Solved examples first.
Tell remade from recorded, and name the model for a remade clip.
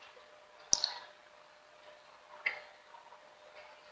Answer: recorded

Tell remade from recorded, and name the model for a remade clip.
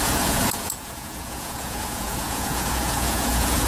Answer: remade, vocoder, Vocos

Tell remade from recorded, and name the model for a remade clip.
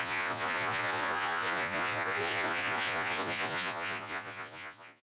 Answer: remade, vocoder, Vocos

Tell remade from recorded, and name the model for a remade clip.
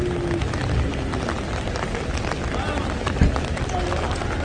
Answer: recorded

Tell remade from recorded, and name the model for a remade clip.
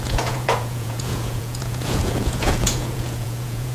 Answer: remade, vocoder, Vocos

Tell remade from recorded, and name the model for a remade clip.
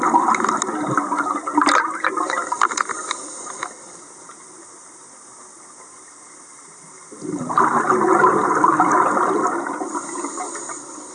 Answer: recorded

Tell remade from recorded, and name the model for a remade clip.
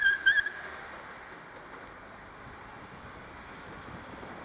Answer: recorded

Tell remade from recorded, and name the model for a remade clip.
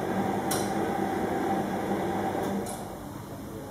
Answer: recorded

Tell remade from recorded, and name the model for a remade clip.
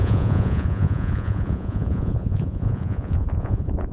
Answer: remade, vocoder, Vocos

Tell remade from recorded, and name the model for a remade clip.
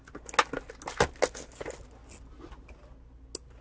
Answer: recorded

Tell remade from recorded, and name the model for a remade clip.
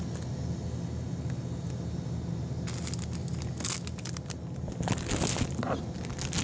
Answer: recorded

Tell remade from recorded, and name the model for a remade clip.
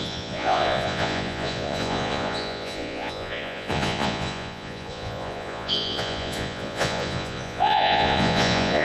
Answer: remade, vocoder, Vocos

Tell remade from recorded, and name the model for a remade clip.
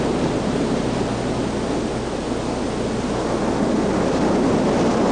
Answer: recorded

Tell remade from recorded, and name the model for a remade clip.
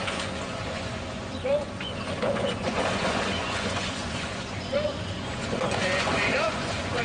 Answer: remade, vocoder, Vocos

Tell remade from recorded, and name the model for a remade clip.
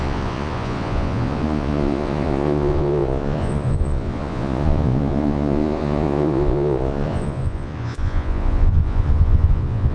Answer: remade, vocoder, Vocos